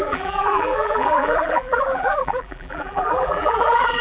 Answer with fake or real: fake